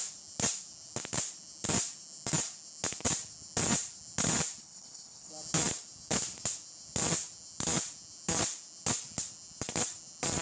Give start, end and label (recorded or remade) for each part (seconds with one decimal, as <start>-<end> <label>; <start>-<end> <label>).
0.0-4.6 recorded; 4.6-5.3 remade; 5.3-10.4 recorded